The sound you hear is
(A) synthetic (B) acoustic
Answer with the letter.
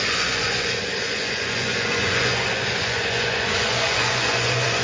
A